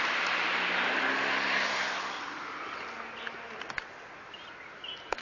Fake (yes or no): no